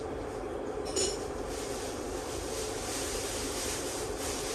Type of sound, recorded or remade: remade